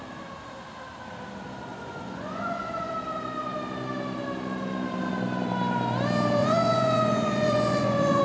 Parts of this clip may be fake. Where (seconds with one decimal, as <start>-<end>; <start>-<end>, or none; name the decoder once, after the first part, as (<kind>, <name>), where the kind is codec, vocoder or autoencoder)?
1.7-2.9 (vocoder, Vocos); 6.4-8.2